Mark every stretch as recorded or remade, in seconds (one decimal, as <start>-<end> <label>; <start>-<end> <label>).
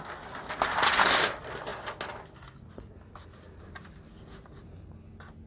0.0-5.5 recorded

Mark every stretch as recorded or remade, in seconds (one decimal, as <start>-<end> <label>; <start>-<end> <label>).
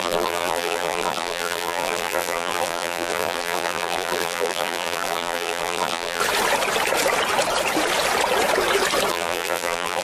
0.0-6.2 remade; 6.2-9.1 recorded; 9.1-10.0 remade